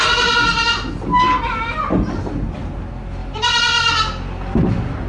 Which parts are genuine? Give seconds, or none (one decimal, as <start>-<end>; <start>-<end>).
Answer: 0.0-3.2